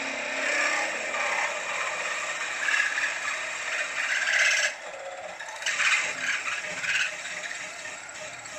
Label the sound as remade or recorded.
recorded